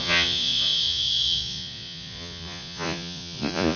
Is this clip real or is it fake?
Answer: fake